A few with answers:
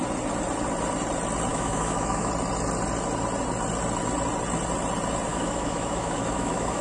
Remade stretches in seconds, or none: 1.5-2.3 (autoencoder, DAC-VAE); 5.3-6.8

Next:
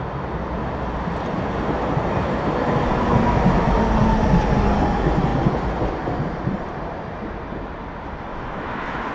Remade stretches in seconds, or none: 8.3-9.1 (autoencoder, DAC-VAE)

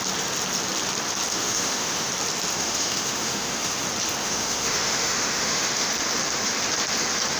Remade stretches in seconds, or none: 1.3-2.1 (autoencoder, DAC-VAE); 2.5-3.8; 4.2-5.9

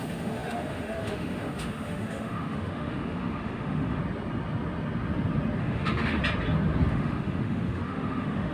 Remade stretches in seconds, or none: 0.0-4.0 (autoencoder, DAC-VAE); 5.6-6.2; 6.9-8.5

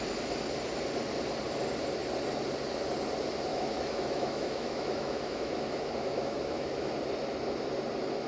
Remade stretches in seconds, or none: 3.5-6.9 (autoencoder, DAC-VAE)

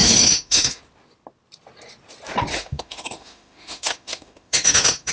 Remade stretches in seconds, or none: 0.0-0.8 (autoencoder, DAC-VAE); 2.5-5.1